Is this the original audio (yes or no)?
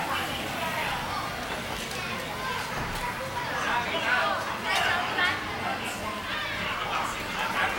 yes